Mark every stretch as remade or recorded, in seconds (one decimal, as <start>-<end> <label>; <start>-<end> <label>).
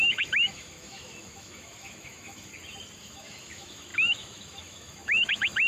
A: 0.0-2.5 remade; 2.5-3.0 recorded; 3.0-5.7 remade